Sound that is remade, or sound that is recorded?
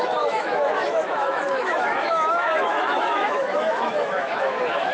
remade